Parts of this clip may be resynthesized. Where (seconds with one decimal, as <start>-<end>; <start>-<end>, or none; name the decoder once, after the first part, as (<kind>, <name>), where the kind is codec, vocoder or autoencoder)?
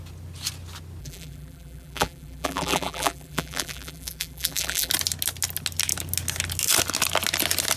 1.0-4.9 (vocoder, BigVGAN v2)